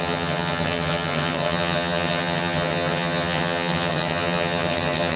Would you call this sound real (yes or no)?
no